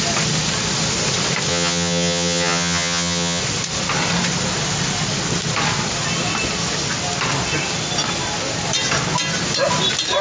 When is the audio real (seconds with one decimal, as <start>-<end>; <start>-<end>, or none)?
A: 0.0-1.5; 3.4-10.2